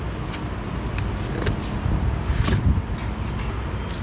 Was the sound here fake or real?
real